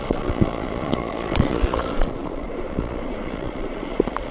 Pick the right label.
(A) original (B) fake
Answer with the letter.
B